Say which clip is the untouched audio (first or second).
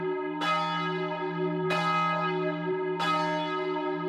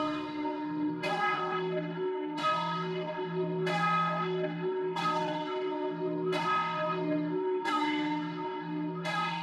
first